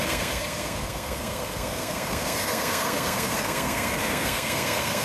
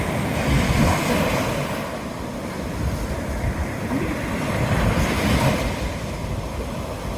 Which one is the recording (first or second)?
second